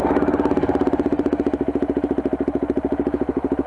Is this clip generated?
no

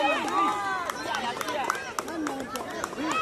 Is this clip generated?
no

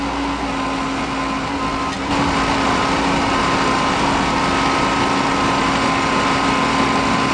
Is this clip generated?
no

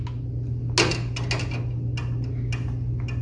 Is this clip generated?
no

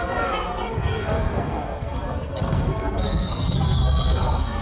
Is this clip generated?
yes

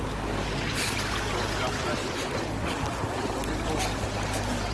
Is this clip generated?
no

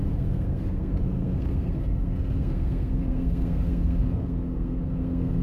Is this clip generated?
yes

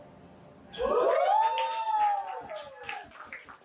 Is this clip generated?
no